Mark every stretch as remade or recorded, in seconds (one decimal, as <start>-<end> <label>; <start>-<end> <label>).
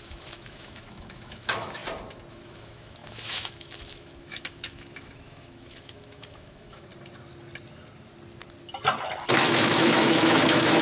0.0-1.8 remade; 1.8-2.3 recorded; 2.3-6.9 remade; 6.9-9.3 recorded; 9.3-10.8 remade